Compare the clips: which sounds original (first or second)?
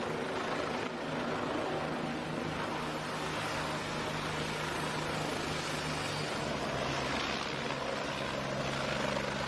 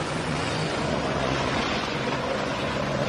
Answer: first